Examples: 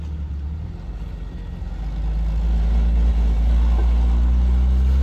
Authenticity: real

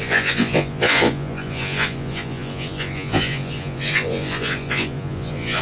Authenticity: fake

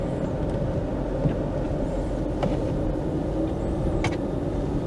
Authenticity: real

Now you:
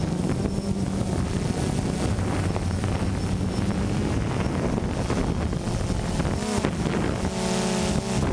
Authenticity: real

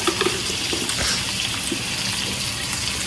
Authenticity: real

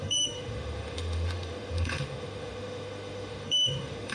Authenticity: fake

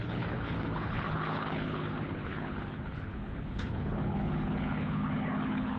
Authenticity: fake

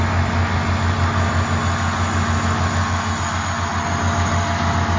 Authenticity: real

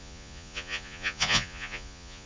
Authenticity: fake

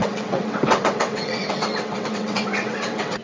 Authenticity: fake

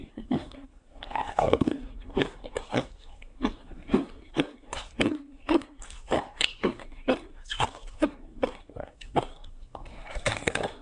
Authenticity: fake